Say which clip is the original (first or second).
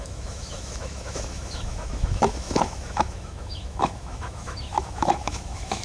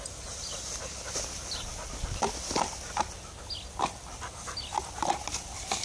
second